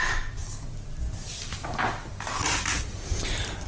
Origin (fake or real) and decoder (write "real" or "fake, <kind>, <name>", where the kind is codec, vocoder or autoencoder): real